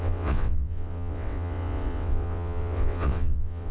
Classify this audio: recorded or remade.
remade